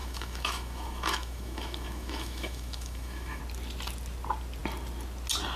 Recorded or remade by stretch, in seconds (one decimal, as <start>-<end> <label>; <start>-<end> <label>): 0.0-3.4 remade; 3.4-5.6 recorded